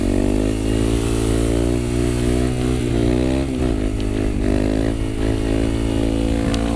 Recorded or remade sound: recorded